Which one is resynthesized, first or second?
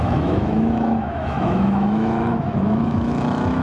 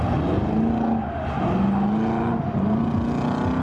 first